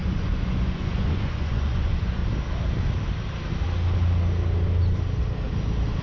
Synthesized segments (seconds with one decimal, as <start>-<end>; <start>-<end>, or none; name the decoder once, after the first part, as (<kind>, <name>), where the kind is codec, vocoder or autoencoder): 0.0-2.2 (vocoder, Vocos)